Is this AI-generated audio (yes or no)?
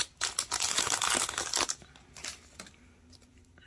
no